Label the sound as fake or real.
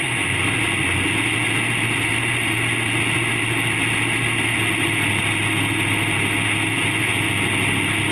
real